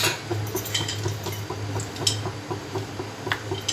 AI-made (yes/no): no